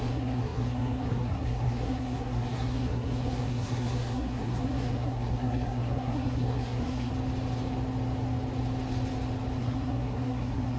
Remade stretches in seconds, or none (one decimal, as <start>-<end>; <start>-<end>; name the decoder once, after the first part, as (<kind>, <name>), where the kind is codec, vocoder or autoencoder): 0.0-7.1 (codec, SNAC); 9.6-10.8